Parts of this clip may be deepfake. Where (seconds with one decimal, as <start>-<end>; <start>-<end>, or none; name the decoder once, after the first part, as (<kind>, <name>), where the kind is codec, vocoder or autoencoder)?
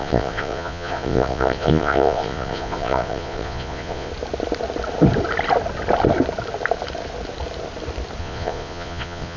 0.0-4.1 (vocoder, Vocos); 8.2-9.4